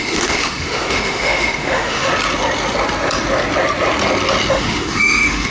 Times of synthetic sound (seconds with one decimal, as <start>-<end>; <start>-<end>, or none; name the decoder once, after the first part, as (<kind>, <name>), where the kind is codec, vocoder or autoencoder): 0.0-2.1 (autoencoder, DAC-VAE); 4.5-5.5